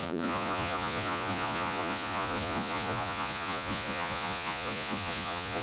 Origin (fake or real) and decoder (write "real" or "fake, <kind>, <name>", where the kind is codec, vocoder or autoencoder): fake, vocoder, Vocos